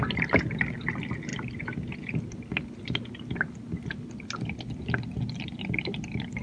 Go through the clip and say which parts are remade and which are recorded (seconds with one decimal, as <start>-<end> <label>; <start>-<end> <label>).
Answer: 0.0-6.4 recorded